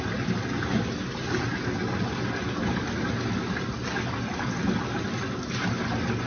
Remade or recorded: recorded